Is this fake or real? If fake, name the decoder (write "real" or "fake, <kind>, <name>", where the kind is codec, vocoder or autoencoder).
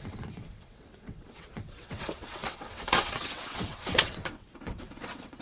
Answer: fake, vocoder, WaveNeXt